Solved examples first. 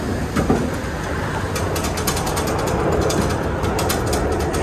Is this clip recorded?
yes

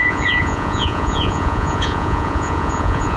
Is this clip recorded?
no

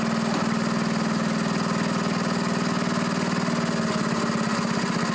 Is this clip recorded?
yes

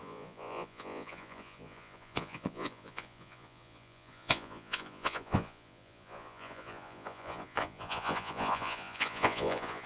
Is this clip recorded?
no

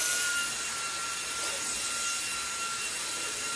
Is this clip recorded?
yes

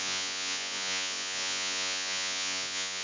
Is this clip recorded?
no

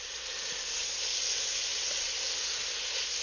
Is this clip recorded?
yes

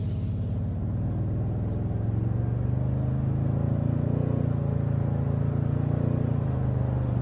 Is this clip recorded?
yes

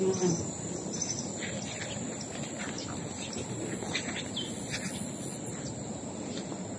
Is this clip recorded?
yes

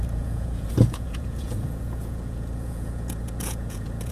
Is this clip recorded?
no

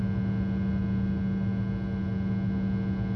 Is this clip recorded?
yes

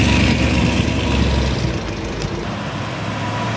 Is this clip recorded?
yes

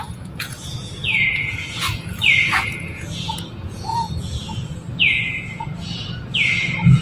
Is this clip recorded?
no